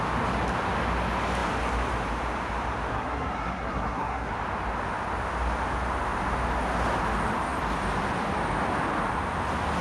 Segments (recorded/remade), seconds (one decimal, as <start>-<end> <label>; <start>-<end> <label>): 0.0-2.9 recorded; 2.9-4.3 remade; 4.3-9.8 recorded